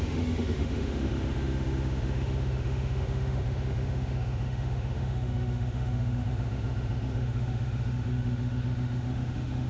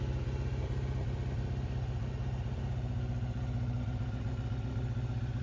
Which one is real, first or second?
second